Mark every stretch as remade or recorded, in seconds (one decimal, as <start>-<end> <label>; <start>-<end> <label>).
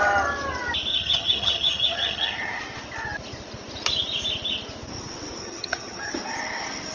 0.0-0.9 recorded; 0.9-2.6 remade; 2.6-5.4 recorded; 5.4-6.1 remade; 6.1-6.9 recorded